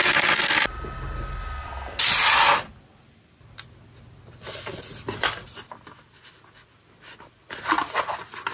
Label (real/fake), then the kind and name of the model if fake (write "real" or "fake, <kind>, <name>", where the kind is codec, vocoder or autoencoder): real